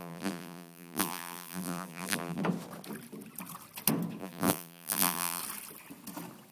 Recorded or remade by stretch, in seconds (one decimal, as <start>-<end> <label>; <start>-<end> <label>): 0.0-2.4 remade; 2.4-4.2 recorded; 4.2-5.4 remade; 5.4-6.5 recorded